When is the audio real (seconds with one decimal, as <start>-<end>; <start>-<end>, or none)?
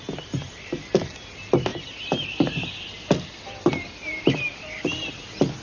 0.0-1.7; 5.1-5.6